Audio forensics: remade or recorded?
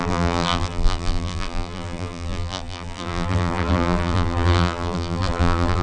remade